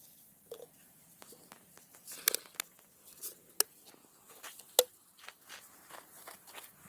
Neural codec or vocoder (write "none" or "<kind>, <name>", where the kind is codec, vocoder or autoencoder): none